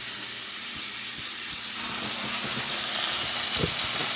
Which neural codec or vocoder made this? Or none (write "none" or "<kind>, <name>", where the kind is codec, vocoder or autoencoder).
none